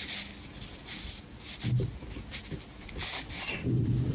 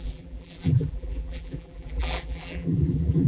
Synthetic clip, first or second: second